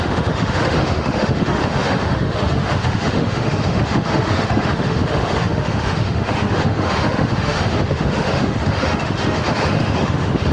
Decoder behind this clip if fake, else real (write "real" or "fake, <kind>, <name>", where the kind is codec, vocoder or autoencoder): fake, autoencoder, DAC-VAE